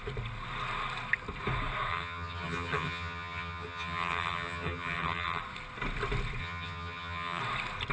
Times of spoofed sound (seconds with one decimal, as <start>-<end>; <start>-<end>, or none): 1.9-5.4; 6.4-7.4